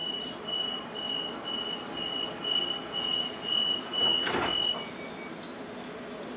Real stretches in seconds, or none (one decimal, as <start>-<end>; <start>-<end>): 0.0-2.8; 4.0-6.4